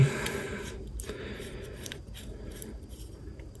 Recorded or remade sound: remade